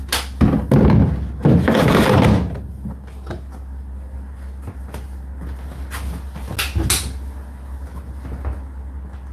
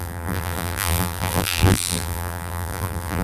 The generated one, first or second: second